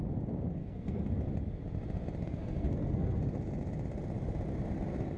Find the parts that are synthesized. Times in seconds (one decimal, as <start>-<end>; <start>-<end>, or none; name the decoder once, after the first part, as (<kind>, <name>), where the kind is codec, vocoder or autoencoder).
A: 0.6-1.1 (codec, SNAC); 2.2-3.2